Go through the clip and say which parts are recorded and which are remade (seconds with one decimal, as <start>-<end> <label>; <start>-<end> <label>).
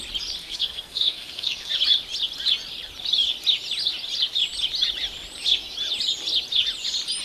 0.0-0.4 recorded; 0.4-1.7 remade; 1.7-7.2 recorded